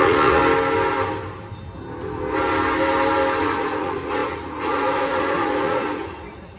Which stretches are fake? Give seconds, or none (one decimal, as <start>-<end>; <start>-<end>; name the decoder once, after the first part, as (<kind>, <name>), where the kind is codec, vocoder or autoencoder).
0.0-0.4 (vocoder, Vocos); 3.4-6.6